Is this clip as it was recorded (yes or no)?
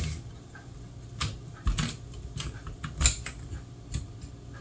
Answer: yes